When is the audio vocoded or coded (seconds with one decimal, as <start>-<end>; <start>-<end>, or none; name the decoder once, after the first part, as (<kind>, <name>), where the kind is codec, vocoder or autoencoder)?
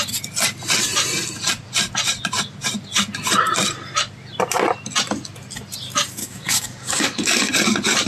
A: 6.2-7.5 (codec, DAC)